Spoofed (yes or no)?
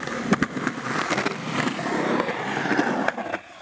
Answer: no